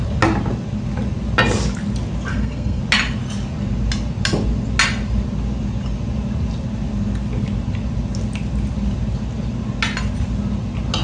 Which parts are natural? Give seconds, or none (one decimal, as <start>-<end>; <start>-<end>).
0.0-2.3; 2.8-11.0